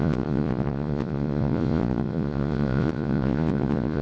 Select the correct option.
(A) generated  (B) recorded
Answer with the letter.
A